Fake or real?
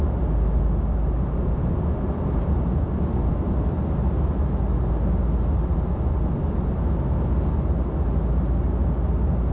real